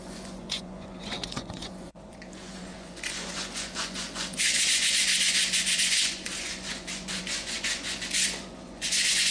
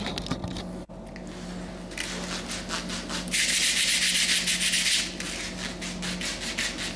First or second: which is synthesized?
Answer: first